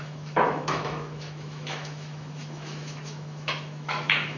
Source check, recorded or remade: remade